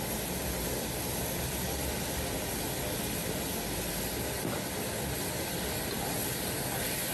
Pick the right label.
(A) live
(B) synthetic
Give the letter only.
A